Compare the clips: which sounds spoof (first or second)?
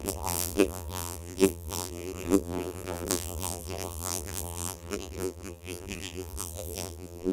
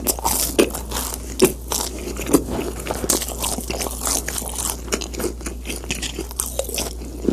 first